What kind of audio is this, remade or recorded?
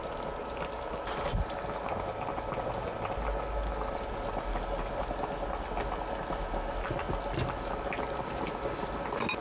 recorded